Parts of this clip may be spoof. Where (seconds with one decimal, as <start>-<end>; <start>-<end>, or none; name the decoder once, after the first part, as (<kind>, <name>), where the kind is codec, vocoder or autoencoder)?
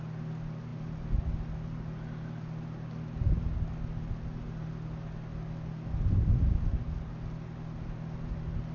none